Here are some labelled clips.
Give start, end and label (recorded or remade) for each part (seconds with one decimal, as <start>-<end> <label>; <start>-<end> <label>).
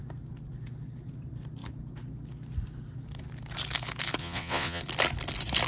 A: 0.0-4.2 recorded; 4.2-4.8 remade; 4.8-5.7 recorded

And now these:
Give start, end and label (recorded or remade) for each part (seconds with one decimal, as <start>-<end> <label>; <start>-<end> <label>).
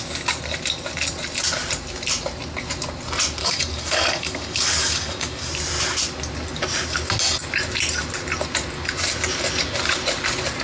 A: 0.0-3.4 recorded; 3.4-5.5 remade; 5.5-10.6 recorded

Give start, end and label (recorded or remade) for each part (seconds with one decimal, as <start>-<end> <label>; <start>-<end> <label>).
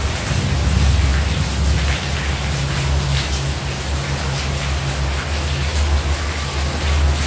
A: 0.0-7.3 recorded